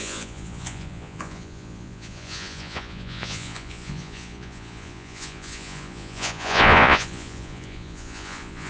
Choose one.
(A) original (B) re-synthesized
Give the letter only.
B